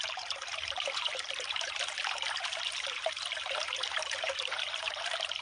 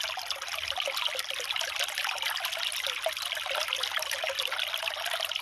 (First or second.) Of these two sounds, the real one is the second